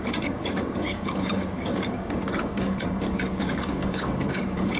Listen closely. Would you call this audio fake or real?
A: fake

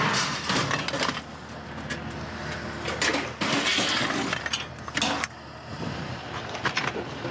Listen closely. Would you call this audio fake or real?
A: real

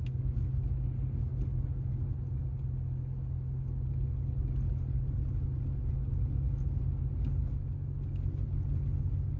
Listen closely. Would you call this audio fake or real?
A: real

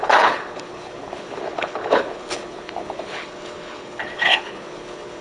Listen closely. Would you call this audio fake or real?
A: fake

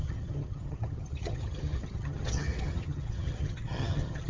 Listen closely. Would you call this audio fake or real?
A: fake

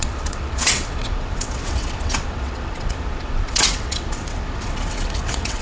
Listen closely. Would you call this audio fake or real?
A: fake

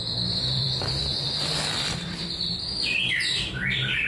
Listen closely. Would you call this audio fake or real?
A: fake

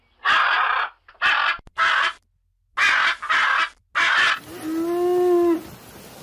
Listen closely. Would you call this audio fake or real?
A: real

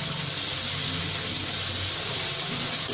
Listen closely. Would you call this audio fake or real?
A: real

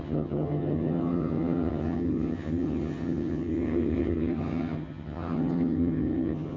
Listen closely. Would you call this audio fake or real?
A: fake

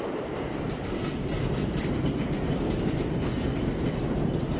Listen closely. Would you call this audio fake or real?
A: real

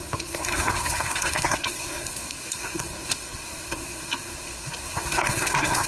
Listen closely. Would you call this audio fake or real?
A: fake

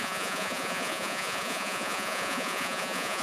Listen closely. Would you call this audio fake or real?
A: fake